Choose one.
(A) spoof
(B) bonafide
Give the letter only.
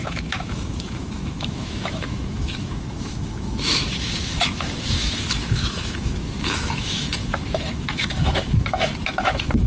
A